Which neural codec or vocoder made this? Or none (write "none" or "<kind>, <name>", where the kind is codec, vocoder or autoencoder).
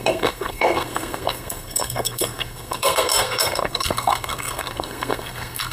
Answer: codec, SNAC